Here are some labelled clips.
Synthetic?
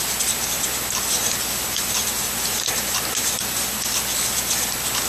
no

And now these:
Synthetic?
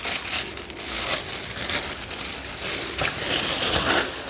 no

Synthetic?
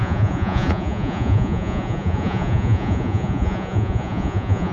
yes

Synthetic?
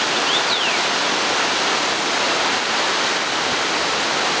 no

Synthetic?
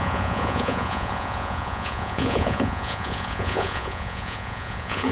yes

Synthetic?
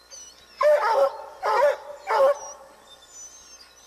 no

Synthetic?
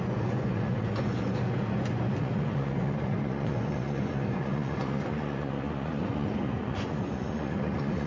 yes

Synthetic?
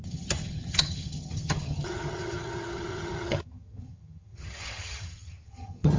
yes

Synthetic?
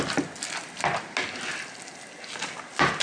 no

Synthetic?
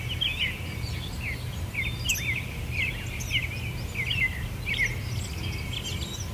no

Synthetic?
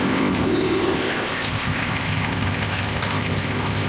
yes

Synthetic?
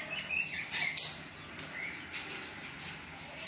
no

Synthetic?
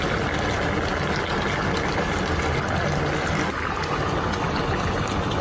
no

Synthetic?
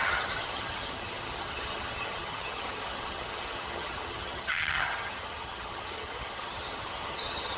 yes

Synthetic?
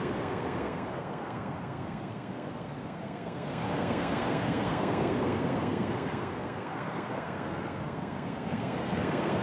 yes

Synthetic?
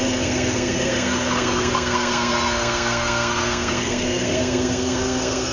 yes